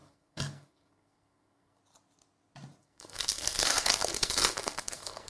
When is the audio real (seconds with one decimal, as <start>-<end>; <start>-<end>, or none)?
1.8-2.8